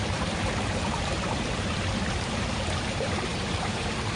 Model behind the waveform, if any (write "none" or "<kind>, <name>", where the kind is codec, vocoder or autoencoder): vocoder, BigVGAN v2